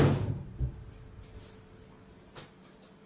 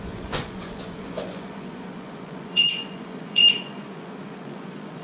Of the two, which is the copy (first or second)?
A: second